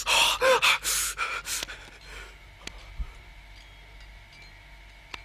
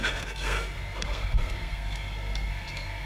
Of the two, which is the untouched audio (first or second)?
first